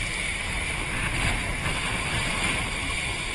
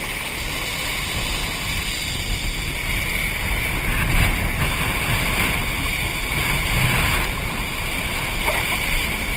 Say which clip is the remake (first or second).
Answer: first